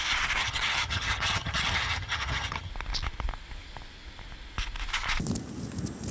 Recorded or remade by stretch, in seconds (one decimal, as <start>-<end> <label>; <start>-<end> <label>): 0.0-0.4 recorded; 0.4-2.7 remade; 2.7-6.1 recorded